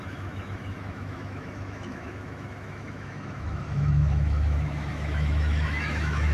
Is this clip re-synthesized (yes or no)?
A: yes